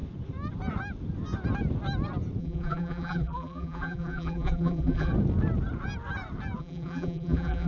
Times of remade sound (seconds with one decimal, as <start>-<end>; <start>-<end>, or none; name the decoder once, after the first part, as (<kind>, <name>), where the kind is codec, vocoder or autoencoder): 2.4-5.1 (vocoder, BigVGAN v2); 6.6-7.7

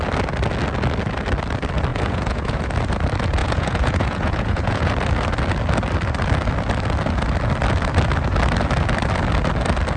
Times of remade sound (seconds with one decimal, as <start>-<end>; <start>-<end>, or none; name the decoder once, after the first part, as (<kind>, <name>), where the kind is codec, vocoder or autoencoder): 1.9-2.7 (vocoder, Vocos); 3.4-4.9

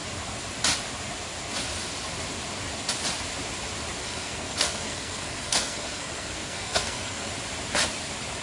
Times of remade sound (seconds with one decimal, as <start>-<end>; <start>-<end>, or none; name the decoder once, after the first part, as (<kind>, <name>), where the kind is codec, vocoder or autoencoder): 4.0-7.3 (codec, SNAC)

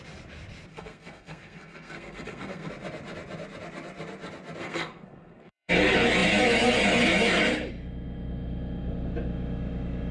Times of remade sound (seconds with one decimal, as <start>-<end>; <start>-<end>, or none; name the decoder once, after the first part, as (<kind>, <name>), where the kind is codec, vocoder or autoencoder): 0.7-2.7 (codec, SNAC); 4.6-5.7

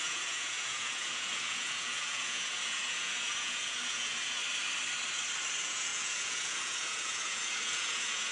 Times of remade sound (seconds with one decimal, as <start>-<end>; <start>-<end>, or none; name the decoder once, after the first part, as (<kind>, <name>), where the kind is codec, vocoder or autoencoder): 0.0-4.4 (vocoder, Vocos); 5.5-8.3

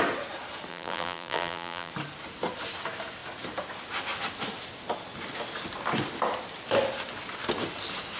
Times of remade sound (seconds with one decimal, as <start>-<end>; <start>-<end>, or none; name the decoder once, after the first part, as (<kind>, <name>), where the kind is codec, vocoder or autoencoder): 0.7-1.9 (vocoder, BigVGAN v2)

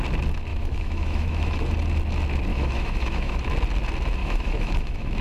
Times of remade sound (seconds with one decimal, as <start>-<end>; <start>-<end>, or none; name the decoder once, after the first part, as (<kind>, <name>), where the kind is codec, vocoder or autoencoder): 0.5-1.6 (autoencoder, DAC-VAE); 2.5-3.5; 4.2-5.2